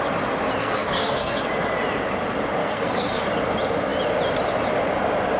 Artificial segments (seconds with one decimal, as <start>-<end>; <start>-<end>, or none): 0.6-1.4; 2.6-3.2